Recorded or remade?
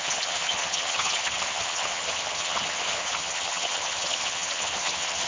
remade